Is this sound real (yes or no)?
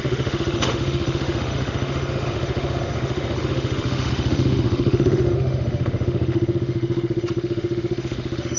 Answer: no